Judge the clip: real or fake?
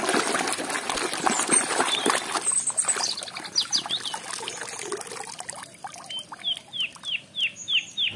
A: real